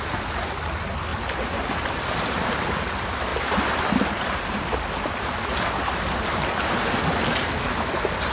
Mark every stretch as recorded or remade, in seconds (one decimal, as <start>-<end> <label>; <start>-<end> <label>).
0.0-8.3 recorded